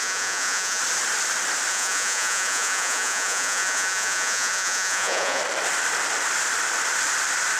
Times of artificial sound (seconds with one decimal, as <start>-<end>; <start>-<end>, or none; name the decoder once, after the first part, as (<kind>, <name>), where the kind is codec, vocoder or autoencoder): 0.0-0.8 (vocoder, Vocos); 1.7-5.4